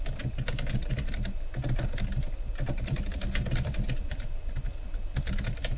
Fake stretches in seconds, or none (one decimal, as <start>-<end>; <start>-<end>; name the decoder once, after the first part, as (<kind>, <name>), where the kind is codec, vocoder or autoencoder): 0.8-3.8 (vocoder, BigVGAN v2)